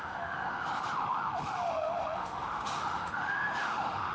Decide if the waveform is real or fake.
fake